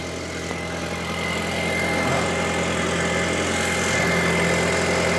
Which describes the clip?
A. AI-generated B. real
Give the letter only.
B